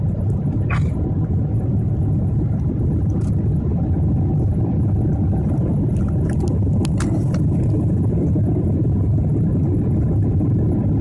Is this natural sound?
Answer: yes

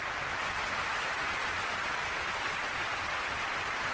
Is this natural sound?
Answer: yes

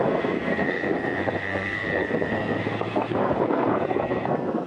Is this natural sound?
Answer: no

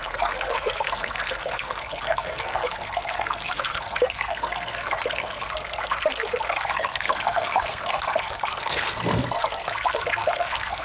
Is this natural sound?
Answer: no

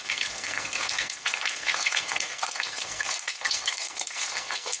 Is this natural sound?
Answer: no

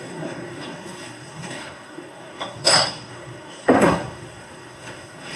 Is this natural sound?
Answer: no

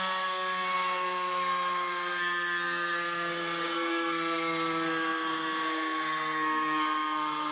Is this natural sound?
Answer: no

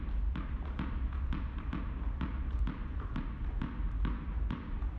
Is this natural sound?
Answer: yes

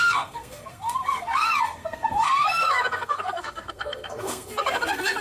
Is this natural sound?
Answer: no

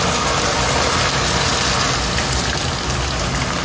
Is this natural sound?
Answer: yes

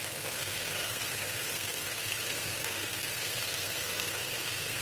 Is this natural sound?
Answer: no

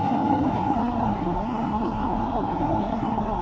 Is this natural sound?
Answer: no